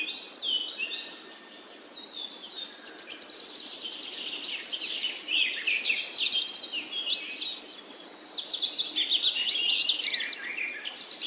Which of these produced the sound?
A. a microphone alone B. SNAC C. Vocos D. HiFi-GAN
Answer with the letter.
A